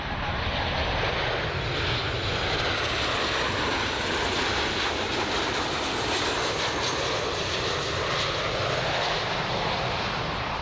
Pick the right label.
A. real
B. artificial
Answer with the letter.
A